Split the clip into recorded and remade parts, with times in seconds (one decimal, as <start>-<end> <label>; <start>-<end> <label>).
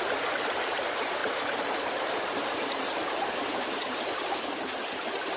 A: 0.0-1.2 recorded; 1.2-4.4 remade; 4.4-5.4 recorded